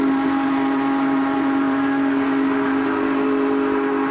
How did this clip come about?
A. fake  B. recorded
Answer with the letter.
B